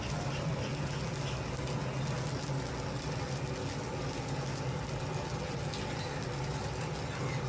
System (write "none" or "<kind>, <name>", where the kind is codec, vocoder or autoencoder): none